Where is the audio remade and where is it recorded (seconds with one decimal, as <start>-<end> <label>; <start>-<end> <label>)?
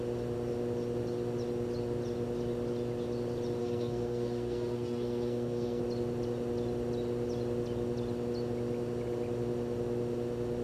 0.0-3.6 recorded; 3.6-5.8 remade; 5.8-10.6 recorded